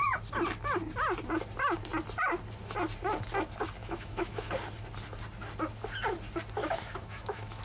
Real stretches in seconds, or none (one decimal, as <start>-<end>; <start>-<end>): 0.0-3.8; 4.5-6.6